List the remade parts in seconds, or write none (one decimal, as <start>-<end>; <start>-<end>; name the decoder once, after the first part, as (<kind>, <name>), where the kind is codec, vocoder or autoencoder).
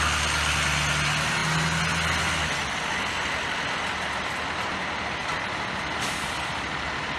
none